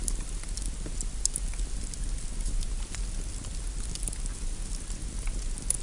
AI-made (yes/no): no